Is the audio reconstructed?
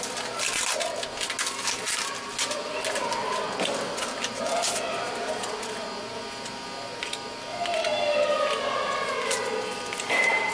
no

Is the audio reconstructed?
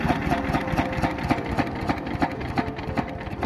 no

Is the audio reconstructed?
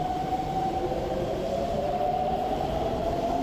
yes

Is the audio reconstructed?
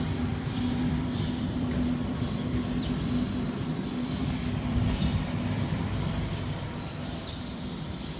yes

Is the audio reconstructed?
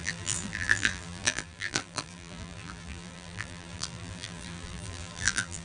yes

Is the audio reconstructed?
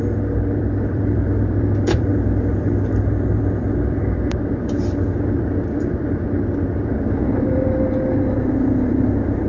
yes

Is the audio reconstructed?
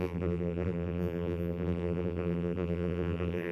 yes